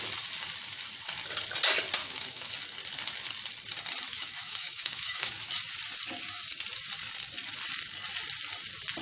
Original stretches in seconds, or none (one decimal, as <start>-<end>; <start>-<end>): 0.0-2.0; 2.5-4.1; 5.5-9.0